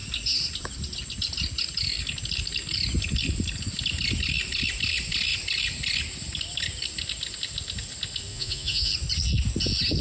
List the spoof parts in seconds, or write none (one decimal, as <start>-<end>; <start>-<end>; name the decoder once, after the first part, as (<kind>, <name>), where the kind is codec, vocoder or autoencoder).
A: 8.3-8.9 (vocoder, Vocos)